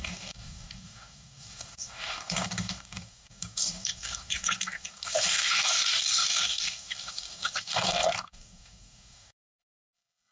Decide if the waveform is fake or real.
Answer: fake